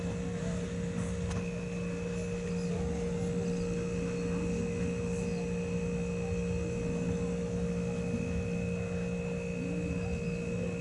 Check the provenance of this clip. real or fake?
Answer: real